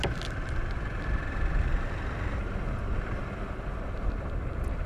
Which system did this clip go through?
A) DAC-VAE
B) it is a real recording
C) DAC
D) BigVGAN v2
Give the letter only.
B